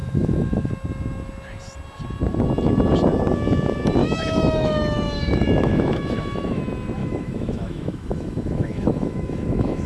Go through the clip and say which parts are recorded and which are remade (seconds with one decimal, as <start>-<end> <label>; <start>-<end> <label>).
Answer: 0.0-0.7 remade; 0.7-4.0 recorded; 4.0-6.6 remade; 6.6-7.0 recorded; 7.0-9.9 remade